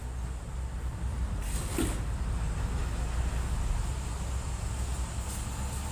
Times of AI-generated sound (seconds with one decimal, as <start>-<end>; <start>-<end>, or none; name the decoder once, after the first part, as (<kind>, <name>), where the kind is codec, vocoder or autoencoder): none